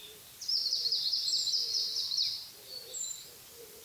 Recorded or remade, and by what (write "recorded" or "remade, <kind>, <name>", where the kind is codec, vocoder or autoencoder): remade, vocoder, BigVGAN v2